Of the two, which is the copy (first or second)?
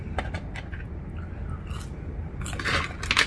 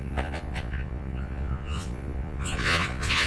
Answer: second